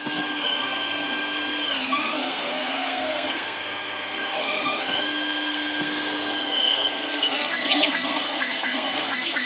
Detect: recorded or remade remade